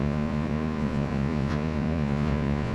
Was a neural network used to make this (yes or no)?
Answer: yes